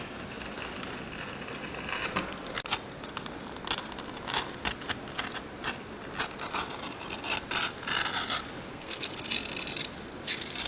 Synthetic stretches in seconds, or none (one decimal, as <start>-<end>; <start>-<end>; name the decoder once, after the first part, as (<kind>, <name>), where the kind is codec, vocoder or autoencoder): 8.7-9.3 (codec, SNAC)